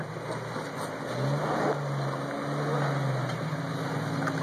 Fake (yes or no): no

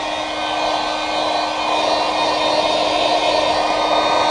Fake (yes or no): no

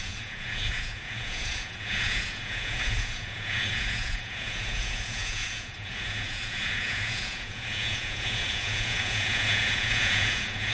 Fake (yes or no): yes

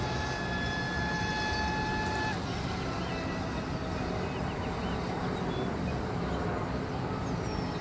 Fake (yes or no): no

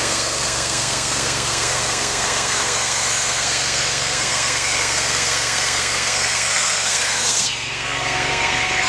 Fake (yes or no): yes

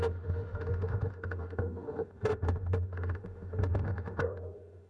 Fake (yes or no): yes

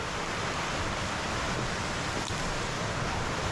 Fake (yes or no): no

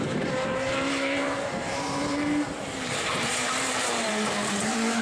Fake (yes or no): yes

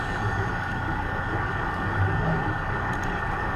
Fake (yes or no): yes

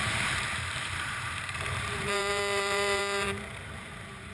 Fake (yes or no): yes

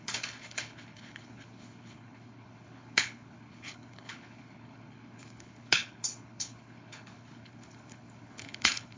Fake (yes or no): yes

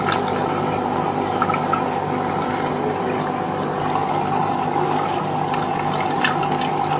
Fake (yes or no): no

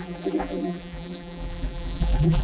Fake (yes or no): yes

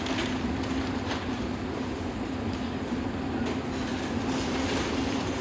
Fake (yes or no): no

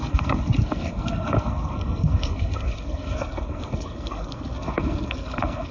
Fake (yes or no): yes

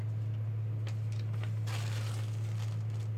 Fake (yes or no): no